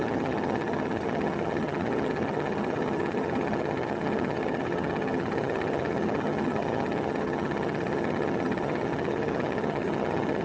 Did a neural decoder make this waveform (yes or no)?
yes